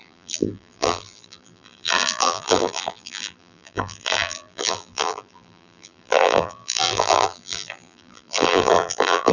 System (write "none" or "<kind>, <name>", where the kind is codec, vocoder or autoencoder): vocoder, BigVGAN v2